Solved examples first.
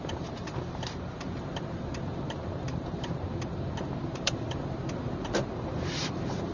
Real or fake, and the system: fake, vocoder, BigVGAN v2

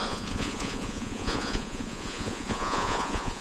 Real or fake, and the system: fake, vocoder, Vocos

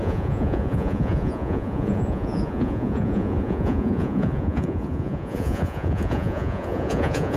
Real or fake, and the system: fake, vocoder, Vocos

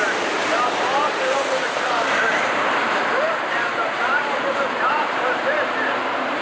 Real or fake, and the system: fake, vocoder, BigVGAN v2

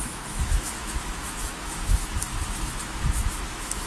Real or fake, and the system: fake, autoencoder, DAC-VAE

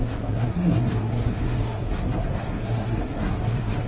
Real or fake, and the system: fake, codec, SNAC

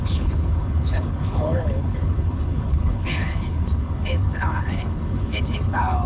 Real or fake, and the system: fake, codec, HILCodec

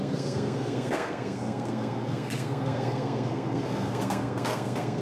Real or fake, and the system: fake, codec, SNAC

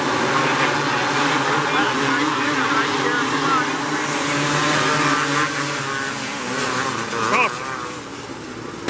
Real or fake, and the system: real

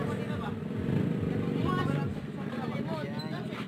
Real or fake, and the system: real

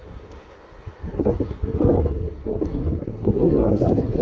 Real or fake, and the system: fake, codec, SNAC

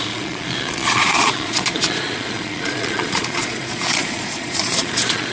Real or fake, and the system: fake, vocoder, Vocos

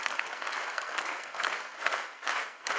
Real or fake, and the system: fake, codec, SNAC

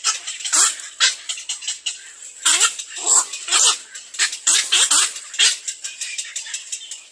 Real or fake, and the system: real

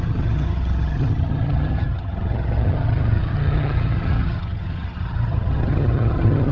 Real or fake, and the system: fake, vocoder, HiFi-GAN